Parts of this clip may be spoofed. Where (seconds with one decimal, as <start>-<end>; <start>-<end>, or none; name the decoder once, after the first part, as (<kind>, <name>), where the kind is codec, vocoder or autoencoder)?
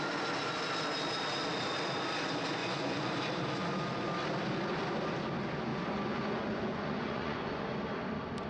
2.6-3.1 (vocoder, Vocos); 5.7-7.7